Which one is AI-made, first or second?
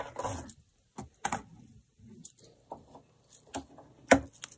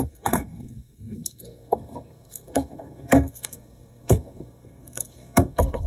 second